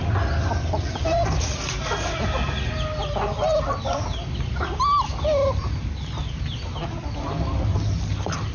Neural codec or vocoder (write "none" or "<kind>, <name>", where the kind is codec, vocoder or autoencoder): none